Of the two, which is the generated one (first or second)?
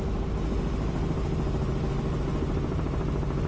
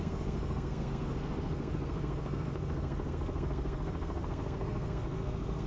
second